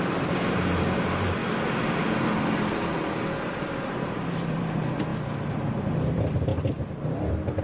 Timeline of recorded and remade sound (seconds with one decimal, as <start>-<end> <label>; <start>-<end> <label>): 0.0-1.4 remade; 1.4-3.9 recorded; 3.9-6.5 remade; 6.5-7.6 recorded